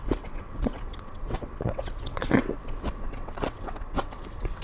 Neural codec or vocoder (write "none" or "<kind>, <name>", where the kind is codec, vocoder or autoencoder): vocoder, WaveNeXt